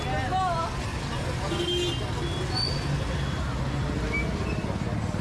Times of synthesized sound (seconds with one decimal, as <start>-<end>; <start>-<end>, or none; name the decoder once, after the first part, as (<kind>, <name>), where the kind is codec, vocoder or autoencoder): none